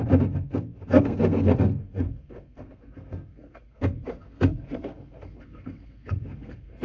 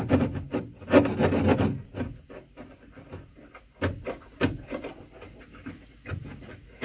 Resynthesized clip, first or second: first